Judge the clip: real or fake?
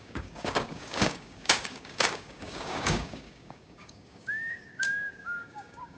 fake